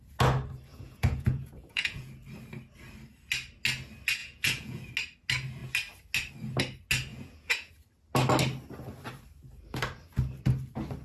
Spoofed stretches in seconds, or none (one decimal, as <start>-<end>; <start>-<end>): 0.7-2.1; 4.2-4.9; 7.1-7.7